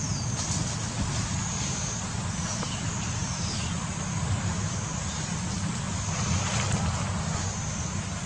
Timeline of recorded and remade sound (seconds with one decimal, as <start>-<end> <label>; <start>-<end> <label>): 0.0-8.3 recorded